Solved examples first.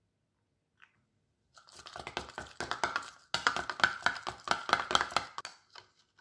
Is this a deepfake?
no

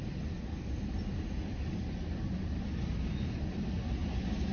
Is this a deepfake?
no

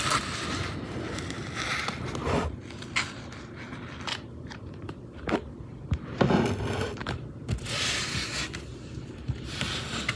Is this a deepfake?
no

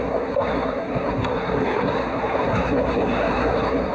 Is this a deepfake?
yes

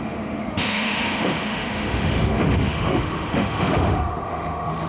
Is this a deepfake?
yes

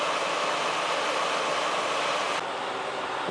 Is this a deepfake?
no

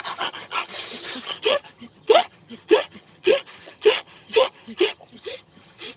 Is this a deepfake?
yes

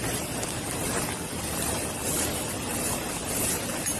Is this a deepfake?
no